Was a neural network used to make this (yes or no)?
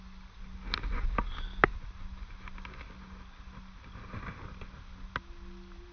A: no